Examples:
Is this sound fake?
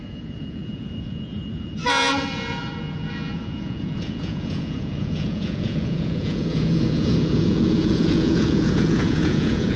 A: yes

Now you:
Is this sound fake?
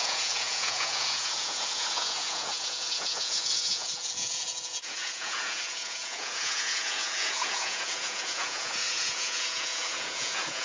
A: yes